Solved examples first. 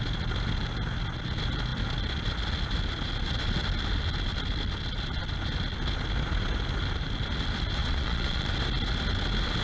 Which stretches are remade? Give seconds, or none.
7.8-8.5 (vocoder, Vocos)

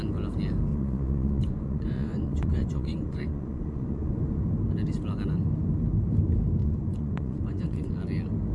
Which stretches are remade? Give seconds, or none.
0.7-4.4 (vocoder, Vocos); 6.6-7.9

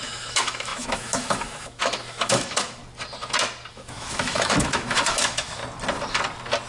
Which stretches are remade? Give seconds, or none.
0.0-2.8 (autoencoder, DAC-VAE); 3.7-5.6

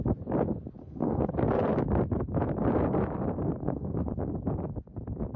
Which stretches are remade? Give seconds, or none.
0.8-1.3 (codec, SNAC); 3.6-4.3

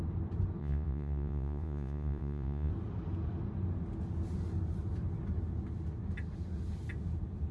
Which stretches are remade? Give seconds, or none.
0.6-2.7 (vocoder, Vocos)